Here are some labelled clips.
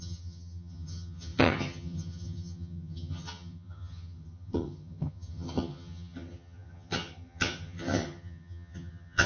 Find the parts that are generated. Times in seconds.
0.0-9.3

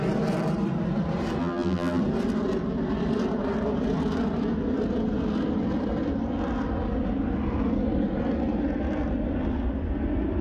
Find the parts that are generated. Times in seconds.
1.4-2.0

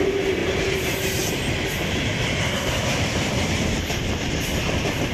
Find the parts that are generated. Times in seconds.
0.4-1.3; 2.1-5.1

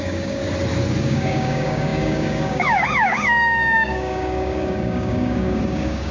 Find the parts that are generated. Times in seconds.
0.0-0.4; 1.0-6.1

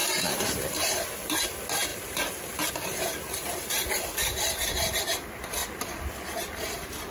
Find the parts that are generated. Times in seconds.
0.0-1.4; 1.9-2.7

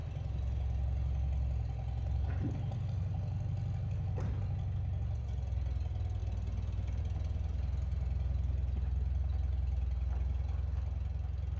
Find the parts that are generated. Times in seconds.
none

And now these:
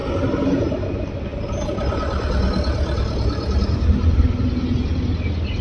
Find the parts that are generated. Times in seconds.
0.0-0.6